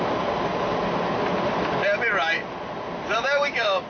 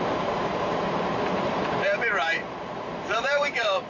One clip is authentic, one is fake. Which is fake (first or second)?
second